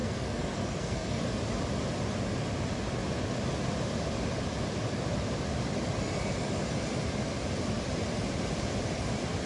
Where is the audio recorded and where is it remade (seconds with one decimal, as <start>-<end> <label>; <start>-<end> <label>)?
0.0-1.2 remade; 1.2-9.5 recorded